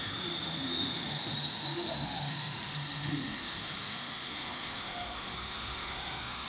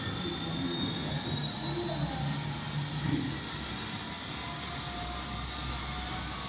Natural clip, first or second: second